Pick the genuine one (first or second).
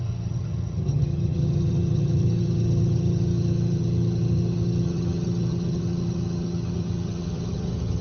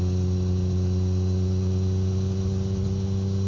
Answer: second